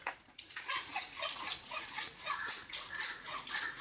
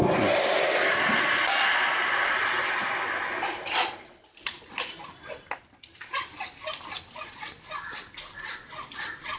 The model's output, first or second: first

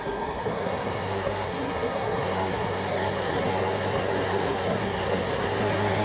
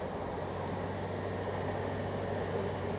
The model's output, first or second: first